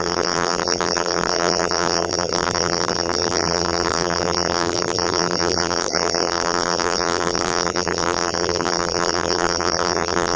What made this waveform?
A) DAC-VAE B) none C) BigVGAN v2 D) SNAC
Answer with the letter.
C